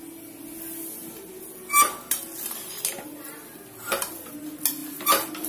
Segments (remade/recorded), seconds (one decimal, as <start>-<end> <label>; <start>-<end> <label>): 0.0-5.5 recorded